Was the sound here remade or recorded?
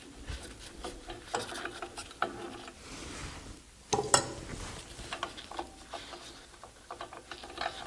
recorded